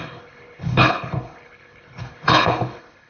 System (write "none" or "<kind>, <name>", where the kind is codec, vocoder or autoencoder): codec, HILCodec